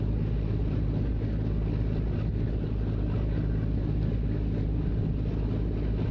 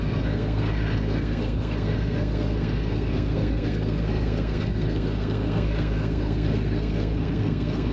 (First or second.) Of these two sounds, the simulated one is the second